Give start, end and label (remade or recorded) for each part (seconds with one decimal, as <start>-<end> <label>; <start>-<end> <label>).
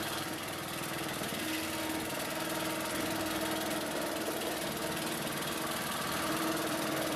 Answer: 0.0-1.3 remade; 1.3-5.6 recorded; 5.6-7.2 remade